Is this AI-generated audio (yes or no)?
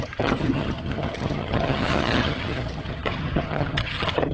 yes